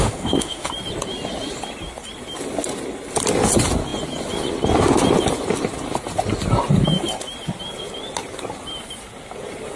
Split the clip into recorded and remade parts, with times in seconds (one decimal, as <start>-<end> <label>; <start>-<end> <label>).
0.0-0.7 remade; 0.7-9.8 recorded